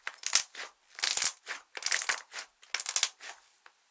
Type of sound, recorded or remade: recorded